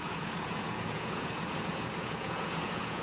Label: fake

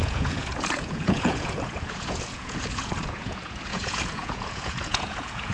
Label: fake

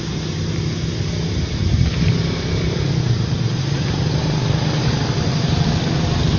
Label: real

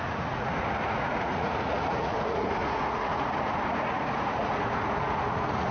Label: fake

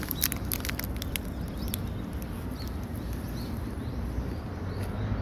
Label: real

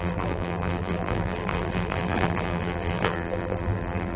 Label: fake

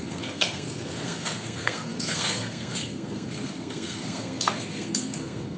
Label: fake